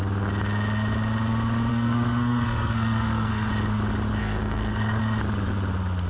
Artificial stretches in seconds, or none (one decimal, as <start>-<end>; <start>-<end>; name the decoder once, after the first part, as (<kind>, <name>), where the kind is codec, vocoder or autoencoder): 1.7-3.5 (codec, SNAC); 4.2-5.0